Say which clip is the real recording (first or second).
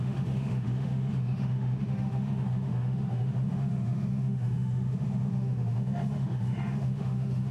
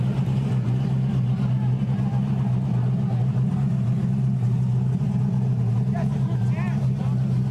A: second